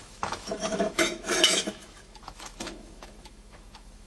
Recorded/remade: remade